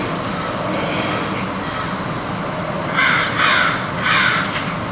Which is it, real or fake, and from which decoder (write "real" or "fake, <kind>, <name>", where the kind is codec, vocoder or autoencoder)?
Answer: real